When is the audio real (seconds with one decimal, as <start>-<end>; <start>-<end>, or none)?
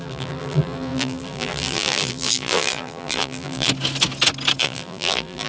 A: 3.7-4.6